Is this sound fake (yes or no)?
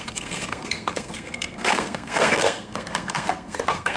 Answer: yes